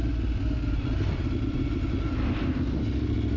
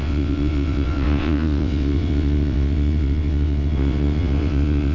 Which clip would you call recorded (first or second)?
first